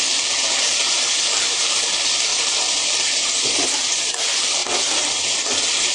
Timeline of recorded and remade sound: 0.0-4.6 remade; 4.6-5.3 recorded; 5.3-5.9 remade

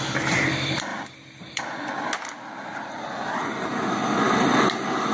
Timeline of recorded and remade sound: 0.0-5.1 recorded

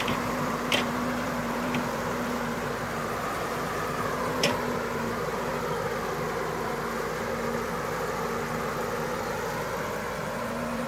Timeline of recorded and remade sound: 0.0-5.5 remade; 5.5-10.2 recorded; 10.2-10.9 remade

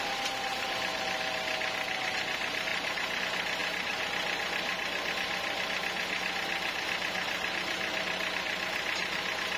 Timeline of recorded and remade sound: 0.0-2.7 recorded; 2.7-3.2 remade; 3.2-9.6 recorded